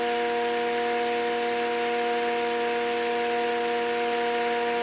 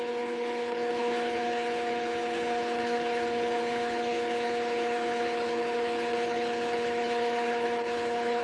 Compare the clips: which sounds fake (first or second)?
second